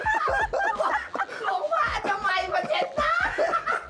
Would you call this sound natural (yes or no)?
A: yes